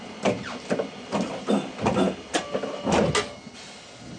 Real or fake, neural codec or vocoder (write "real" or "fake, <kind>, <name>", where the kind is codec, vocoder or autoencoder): real